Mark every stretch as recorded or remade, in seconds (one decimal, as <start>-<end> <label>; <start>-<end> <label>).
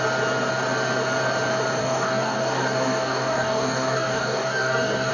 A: 0.0-1.8 recorded; 1.8-5.1 remade